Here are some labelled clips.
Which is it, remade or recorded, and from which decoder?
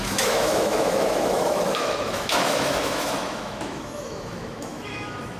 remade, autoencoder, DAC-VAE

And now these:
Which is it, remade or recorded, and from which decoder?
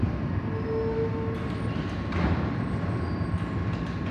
recorded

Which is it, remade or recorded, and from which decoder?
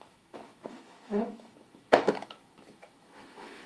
remade, autoencoder, DAC-VAE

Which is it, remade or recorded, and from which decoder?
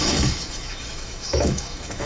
remade, autoencoder, DAC-VAE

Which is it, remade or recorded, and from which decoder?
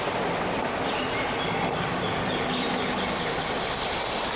recorded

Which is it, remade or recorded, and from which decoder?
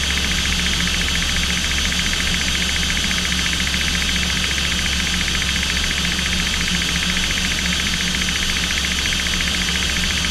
recorded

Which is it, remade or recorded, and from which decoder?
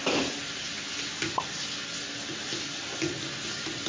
recorded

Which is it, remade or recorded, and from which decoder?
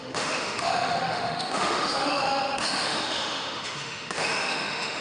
remade, autoencoder, DAC-VAE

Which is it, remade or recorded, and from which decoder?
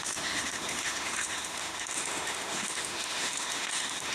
remade, autoencoder, DAC-VAE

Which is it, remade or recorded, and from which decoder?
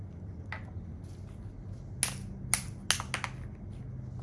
recorded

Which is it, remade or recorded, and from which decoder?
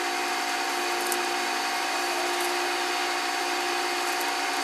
recorded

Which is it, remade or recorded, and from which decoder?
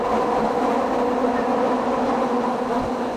recorded